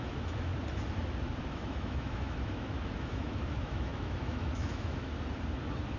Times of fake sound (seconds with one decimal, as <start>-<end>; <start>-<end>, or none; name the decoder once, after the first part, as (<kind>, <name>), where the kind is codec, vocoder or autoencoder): 0.0-0.5 (autoencoder, DAC-VAE); 1.4-5.1